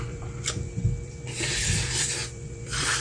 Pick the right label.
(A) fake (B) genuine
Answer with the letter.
A